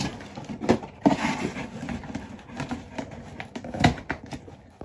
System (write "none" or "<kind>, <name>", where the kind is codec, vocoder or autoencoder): none